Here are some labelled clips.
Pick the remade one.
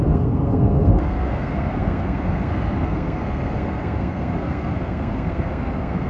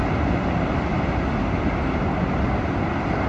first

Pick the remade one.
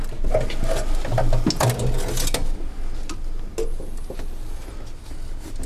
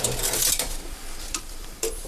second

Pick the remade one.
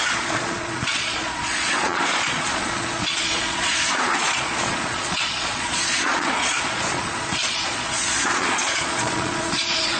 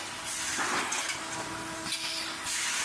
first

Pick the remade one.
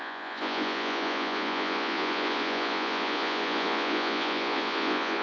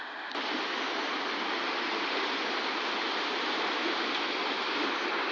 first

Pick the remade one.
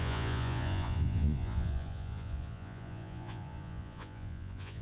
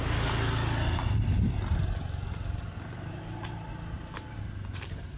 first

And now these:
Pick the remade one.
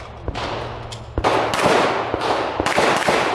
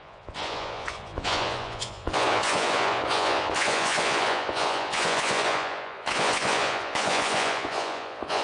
second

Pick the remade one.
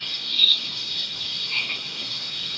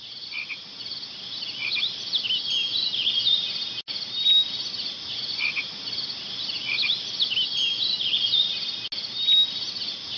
first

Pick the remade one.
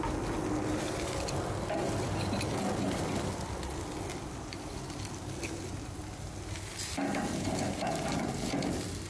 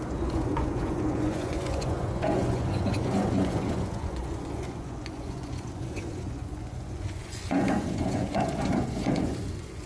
second